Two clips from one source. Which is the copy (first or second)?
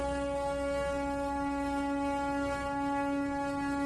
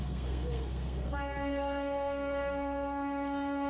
second